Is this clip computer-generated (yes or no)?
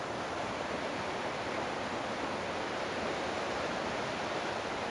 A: yes